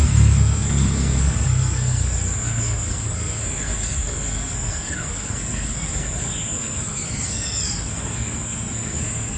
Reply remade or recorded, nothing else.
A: remade